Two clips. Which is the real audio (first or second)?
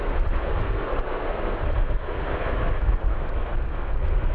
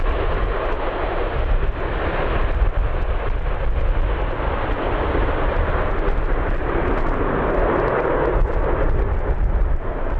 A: second